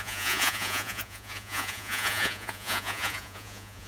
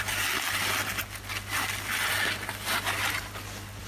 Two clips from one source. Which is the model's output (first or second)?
first